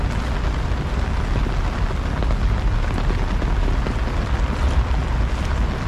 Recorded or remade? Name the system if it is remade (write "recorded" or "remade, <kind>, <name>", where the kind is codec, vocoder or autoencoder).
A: recorded